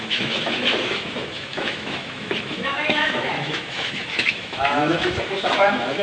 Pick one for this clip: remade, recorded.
remade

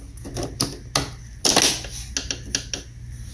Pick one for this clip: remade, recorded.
recorded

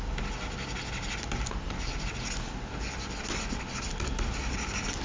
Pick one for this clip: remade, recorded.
recorded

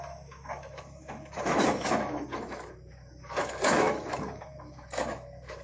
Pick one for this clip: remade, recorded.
remade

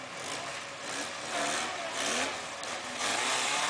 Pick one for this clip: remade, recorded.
recorded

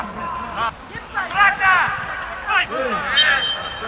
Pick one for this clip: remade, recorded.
recorded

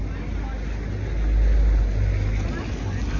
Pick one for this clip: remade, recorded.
recorded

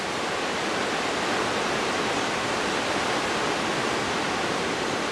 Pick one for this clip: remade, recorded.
remade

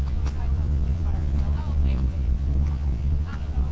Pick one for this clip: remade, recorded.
remade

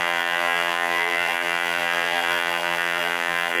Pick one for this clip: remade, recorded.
remade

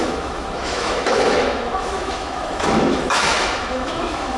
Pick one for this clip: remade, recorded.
remade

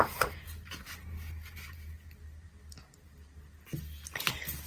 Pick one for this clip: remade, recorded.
recorded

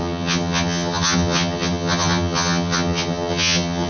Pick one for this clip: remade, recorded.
remade